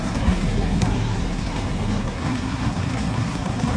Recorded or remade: remade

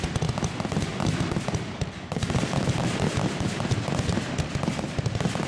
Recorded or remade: recorded